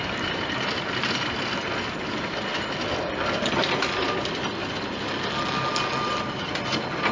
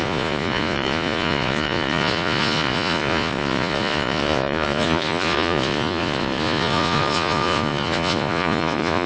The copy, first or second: second